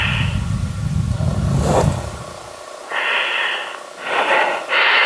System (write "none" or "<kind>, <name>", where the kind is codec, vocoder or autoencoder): none